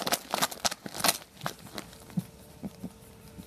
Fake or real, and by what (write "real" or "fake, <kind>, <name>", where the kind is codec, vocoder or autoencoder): real